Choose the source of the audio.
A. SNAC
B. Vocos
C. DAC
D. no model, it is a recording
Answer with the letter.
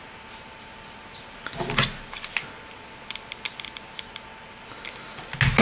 D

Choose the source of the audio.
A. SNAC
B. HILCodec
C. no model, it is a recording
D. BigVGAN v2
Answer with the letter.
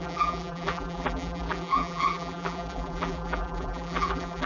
D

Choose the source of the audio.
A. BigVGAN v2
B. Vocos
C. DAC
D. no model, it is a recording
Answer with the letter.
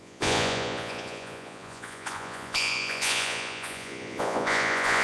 B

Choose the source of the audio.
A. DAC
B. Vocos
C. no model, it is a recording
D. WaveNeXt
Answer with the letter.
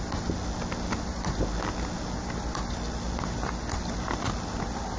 C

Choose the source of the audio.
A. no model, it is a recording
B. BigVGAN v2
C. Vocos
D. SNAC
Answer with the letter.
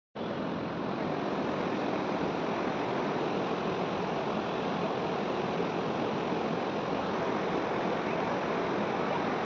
B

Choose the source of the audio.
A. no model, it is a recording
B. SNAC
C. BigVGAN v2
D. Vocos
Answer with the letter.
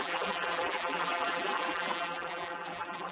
C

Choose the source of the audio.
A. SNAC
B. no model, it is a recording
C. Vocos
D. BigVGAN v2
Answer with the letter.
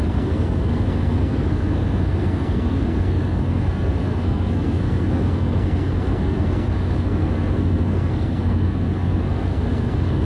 A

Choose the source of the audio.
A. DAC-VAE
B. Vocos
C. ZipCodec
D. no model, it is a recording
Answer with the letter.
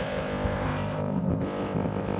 C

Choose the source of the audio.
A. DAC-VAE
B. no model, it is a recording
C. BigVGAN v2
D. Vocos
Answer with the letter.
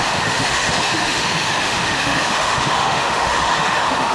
A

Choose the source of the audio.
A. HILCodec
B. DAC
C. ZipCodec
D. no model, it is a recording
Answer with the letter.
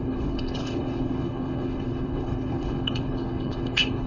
A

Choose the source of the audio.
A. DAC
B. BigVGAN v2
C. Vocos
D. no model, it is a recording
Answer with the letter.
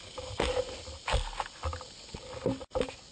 D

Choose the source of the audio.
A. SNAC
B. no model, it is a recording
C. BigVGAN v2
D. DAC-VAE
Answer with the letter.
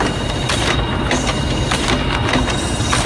B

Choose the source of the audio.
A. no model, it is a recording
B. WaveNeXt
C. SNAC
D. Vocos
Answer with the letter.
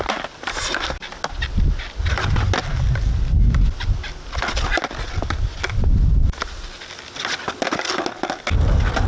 A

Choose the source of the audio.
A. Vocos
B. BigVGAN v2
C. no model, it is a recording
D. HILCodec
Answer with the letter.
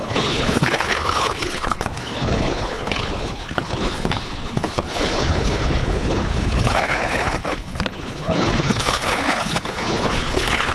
D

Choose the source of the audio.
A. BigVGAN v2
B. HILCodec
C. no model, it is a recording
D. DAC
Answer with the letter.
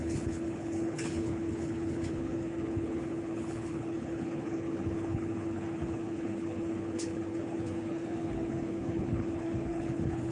B